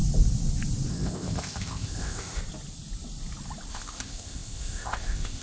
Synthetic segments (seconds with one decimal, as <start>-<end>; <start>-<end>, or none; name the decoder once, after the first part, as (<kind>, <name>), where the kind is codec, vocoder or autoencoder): 0.9-2.4 (codec, ZipCodec); 3.7-5.4